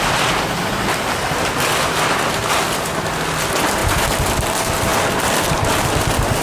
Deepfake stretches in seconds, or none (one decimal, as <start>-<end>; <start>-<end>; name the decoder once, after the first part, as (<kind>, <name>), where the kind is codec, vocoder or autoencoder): 4.9-5.8 (vocoder, BigVGAN v2)